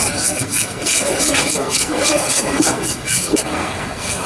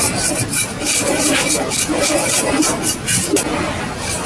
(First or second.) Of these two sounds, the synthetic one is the first